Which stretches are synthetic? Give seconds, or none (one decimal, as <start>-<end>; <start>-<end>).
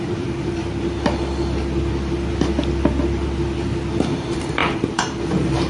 0.0-0.6; 4.0-5.7